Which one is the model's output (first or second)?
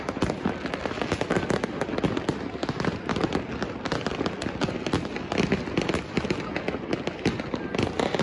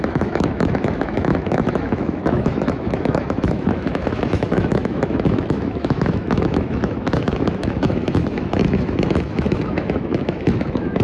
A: second